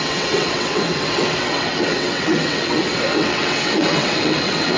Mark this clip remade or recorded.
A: remade